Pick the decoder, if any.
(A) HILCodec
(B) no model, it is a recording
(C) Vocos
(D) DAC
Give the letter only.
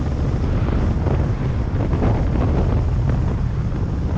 B